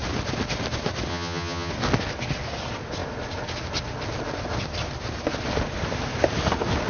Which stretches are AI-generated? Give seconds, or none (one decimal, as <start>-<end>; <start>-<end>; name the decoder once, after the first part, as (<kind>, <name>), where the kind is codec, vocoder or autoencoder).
1.1-1.7 (vocoder, HiFi-GAN)

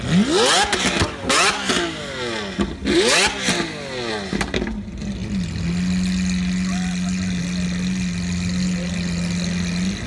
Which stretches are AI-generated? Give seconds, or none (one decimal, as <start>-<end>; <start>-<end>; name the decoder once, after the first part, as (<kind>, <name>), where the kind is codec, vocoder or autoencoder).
none

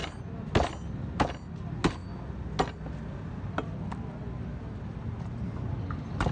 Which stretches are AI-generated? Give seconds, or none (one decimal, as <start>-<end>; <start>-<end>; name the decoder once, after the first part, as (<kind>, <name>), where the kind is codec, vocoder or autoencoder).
none

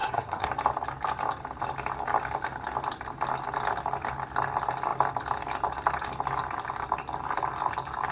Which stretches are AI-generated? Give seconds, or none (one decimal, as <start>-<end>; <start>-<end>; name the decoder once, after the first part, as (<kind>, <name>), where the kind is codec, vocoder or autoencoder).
0.0-0.5 (codec, SNAC)

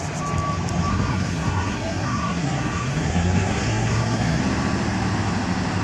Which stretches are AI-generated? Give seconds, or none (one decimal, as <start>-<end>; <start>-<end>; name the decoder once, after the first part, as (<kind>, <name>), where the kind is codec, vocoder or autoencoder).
0.9-4.4 (codec, SNAC)

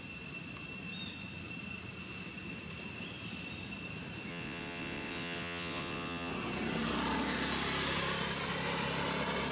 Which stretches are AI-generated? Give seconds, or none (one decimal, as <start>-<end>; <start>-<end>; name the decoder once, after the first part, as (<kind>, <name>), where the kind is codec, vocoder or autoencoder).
4.3-6.3 (vocoder, WaveNeXt)